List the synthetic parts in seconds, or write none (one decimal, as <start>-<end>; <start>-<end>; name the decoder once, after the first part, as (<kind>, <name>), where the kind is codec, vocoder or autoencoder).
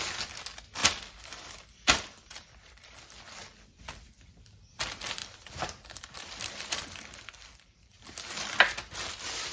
0.8-4.7 (vocoder, BigVGAN v2); 5.2-8.0